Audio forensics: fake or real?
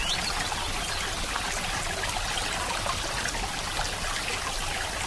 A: real